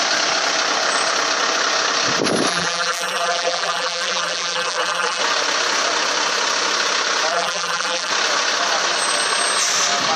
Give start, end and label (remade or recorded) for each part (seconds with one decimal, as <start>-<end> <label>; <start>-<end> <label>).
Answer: 0.0-2.5 recorded; 2.5-5.2 remade; 5.2-7.3 recorded; 7.3-8.1 remade; 8.1-10.2 recorded